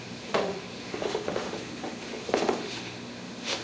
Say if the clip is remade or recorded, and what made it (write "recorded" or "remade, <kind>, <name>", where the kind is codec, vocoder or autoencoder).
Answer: remade, autoencoder, DAC-VAE